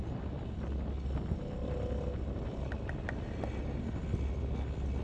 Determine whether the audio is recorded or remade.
recorded